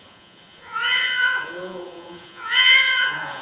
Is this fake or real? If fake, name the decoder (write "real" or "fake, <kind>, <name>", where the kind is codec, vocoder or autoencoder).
fake, vocoder, Vocos